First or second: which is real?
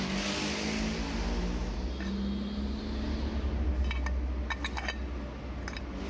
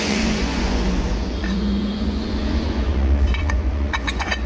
first